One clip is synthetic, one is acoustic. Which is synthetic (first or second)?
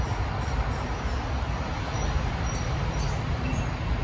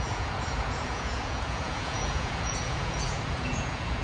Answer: second